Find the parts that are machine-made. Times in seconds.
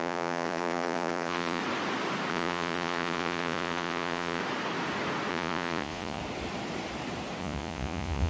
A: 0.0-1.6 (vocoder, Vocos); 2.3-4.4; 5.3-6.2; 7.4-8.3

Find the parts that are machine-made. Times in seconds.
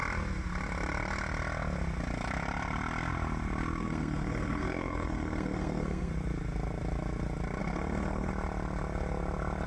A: 3.8-6.1 (codec, SNAC); 7.6-8.3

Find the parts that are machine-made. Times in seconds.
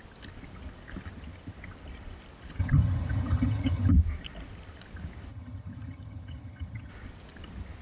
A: 2.6-3.9 (vocoder, HiFi-GAN); 5.3-6.9